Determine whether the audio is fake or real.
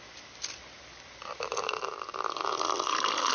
real